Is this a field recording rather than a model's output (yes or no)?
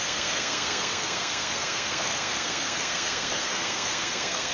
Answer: no